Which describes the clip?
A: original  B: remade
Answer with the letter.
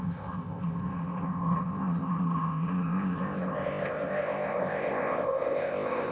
B